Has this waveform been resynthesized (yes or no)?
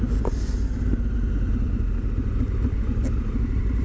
no